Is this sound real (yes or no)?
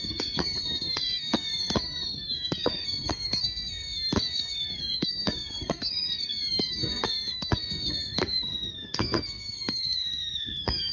no